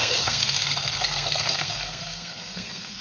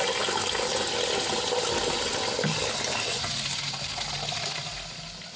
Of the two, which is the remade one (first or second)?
first